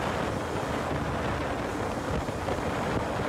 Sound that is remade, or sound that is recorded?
recorded